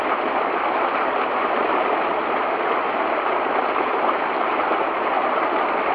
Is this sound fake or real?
real